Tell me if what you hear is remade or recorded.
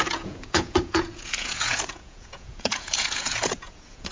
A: remade